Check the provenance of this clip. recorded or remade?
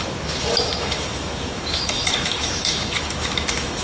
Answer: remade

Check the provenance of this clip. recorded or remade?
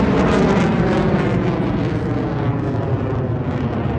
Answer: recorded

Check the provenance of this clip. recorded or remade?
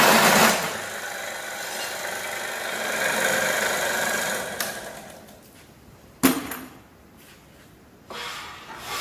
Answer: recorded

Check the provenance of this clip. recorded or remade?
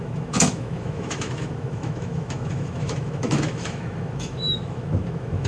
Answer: remade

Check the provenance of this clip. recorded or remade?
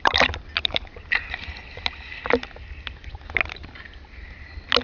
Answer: recorded